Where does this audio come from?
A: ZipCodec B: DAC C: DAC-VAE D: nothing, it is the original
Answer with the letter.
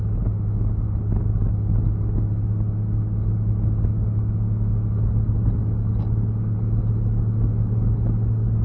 D